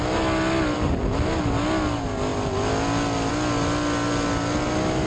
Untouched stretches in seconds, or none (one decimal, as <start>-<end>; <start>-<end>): 0.0-5.1